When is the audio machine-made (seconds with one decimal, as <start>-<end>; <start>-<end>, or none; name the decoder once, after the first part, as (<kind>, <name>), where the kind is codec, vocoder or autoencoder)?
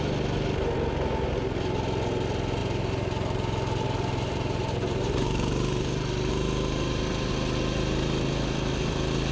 2.6-6.3 (vocoder, BigVGAN v2)